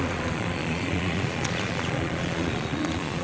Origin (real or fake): fake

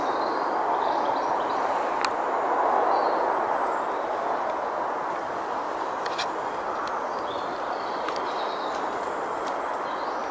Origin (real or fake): real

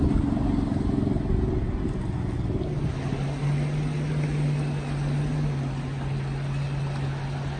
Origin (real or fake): real